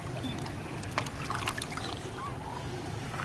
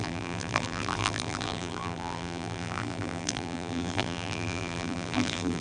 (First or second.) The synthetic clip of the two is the second